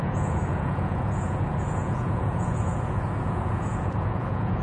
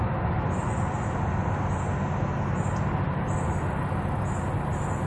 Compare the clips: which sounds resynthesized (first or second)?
first